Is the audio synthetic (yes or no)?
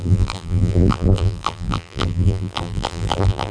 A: yes